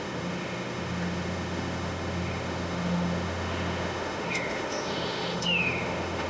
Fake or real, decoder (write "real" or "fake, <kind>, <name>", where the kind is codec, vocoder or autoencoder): fake, autoencoder, DAC-VAE